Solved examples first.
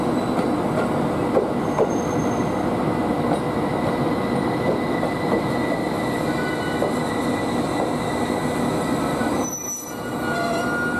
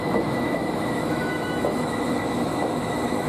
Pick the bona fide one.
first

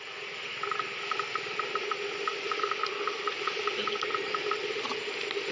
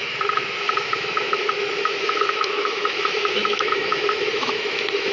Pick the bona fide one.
first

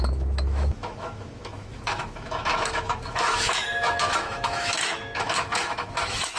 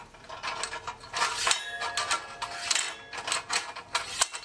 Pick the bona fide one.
second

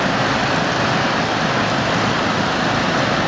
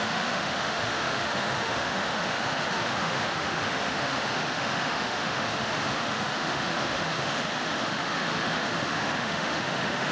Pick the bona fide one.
first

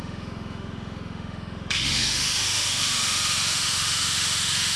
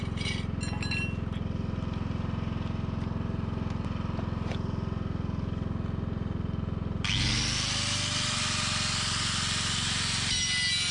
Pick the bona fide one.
second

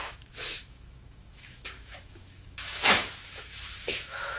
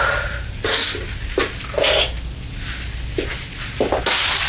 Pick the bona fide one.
second